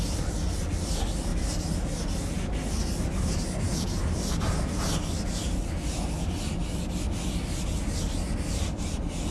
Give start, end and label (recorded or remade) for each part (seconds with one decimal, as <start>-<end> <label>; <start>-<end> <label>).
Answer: 0.0-9.3 recorded